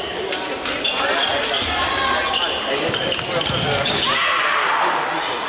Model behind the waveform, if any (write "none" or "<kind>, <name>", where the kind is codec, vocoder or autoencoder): none